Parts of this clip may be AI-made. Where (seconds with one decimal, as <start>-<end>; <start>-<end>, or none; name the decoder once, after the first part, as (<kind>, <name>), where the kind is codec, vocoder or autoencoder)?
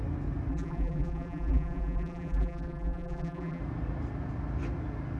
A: 0.5-3.6 (vocoder, BigVGAN v2)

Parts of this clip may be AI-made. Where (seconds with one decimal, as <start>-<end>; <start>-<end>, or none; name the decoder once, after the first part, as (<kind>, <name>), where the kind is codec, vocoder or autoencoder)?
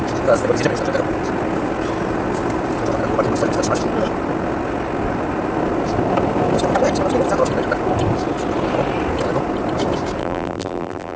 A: 10.2-11.2 (vocoder, BigVGAN v2)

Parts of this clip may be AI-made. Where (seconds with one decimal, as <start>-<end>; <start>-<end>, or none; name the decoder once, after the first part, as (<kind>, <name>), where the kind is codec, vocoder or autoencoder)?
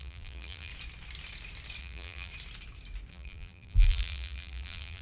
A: 0.0-0.7 (vocoder, BigVGAN v2); 1.8-2.3; 3.1-5.0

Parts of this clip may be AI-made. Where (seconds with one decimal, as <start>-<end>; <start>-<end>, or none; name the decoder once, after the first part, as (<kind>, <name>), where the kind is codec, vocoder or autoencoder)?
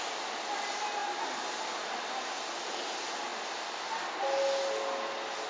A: none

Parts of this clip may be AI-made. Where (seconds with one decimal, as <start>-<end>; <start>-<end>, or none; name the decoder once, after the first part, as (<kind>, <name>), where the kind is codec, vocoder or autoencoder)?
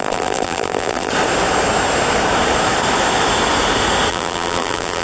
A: 0.0-1.1 (vocoder, BigVGAN v2); 4.1-5.0